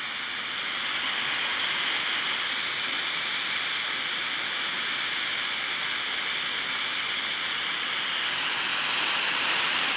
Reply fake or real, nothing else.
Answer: real